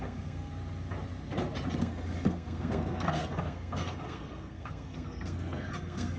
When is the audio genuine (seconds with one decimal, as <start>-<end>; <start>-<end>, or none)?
0.5-1.8